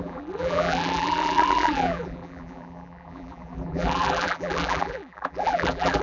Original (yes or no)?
no